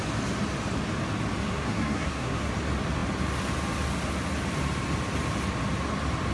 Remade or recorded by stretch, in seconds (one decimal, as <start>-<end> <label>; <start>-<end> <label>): 0.0-1.4 recorded; 1.4-2.5 remade; 2.5-6.3 recorded